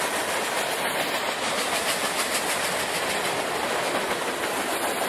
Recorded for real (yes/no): yes